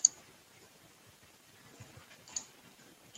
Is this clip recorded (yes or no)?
no